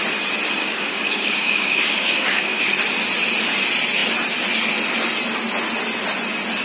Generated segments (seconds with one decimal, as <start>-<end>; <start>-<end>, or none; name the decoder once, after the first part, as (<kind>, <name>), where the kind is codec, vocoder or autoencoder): 0.6-2.6 (codec, DAC)

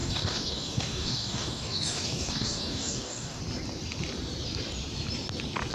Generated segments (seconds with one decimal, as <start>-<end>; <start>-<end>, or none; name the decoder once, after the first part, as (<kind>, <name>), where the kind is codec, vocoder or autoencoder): 0.0-3.4 (codec, DAC)

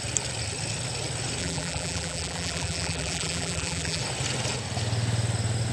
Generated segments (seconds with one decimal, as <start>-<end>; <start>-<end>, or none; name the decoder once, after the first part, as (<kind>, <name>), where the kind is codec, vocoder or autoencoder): 1.4-4.0 (vocoder, BigVGAN v2)

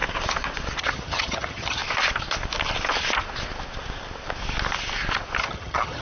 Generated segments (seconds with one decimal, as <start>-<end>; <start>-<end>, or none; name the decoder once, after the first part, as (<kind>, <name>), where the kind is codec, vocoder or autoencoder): 0.8-1.8 (vocoder, HiFi-GAN); 5.4-6.0

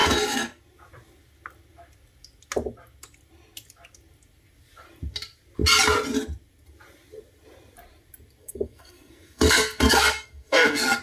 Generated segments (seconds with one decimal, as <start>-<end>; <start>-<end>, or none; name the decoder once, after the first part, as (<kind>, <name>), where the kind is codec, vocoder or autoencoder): 0.0-0.6 (codec, SNAC); 8.4-11.0

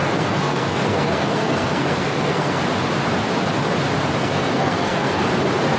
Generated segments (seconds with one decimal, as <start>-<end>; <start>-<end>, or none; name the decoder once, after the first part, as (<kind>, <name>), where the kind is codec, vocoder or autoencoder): 0.0-2.6 (codec, SNAC); 4.2-5.2

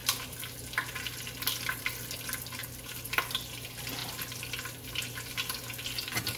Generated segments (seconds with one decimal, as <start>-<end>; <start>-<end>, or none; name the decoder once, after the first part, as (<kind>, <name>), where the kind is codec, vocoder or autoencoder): none